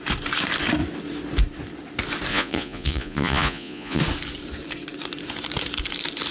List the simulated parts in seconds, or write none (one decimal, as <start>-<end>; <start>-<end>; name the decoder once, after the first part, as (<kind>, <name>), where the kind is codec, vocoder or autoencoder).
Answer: 2.3-4.0 (vocoder, Vocos)